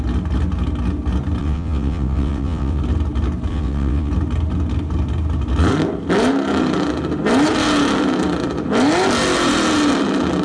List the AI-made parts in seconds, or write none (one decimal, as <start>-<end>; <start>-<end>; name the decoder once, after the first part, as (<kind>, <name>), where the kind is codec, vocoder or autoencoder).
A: 1.4-2.8 (vocoder, WaveNeXt); 3.5-4.1